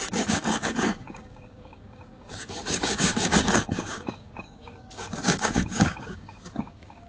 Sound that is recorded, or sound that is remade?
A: remade